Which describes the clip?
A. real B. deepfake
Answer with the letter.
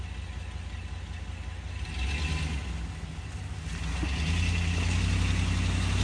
A